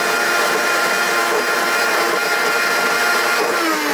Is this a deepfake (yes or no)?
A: no